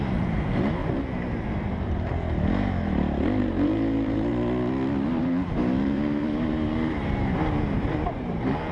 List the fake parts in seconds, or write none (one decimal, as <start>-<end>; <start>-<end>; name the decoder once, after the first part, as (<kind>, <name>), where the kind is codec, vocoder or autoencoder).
0.0-0.8 (vocoder, BigVGAN v2); 3.4-4.3; 5.2-8.7